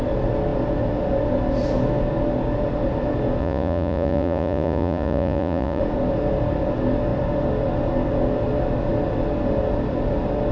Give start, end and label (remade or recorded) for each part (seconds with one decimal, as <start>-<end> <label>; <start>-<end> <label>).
0.0-3.4 recorded; 3.4-5.8 remade; 5.8-10.5 recorded